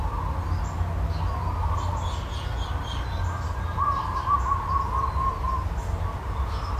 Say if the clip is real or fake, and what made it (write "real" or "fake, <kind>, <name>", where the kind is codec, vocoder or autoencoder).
real